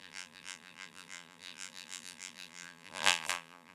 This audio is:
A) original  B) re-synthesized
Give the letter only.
B